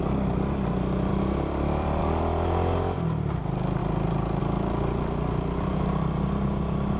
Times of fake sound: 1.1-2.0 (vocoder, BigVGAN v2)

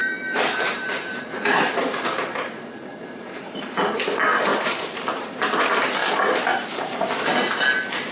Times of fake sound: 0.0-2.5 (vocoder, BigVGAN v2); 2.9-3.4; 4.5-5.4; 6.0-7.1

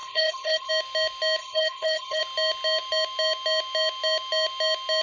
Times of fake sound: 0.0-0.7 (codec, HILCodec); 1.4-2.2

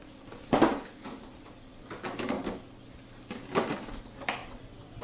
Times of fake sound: 4.4-5.0 (vocoder, WaveNeXt)